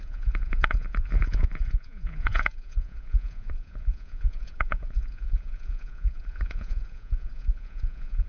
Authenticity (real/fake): fake